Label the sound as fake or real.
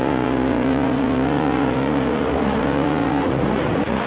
fake